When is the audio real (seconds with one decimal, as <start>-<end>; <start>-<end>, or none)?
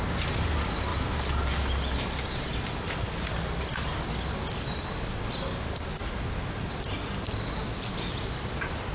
0.0-8.9